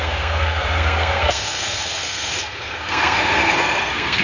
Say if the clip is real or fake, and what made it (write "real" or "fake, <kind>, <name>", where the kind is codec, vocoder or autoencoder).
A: fake, codec, SNAC